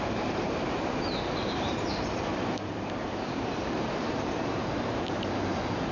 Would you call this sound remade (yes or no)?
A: yes